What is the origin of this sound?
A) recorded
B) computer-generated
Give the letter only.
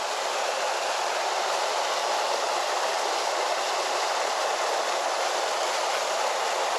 A